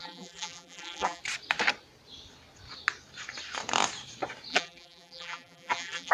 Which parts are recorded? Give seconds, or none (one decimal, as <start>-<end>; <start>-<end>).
1.2-4.5